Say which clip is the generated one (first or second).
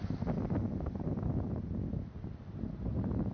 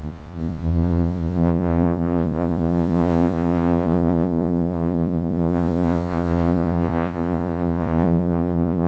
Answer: second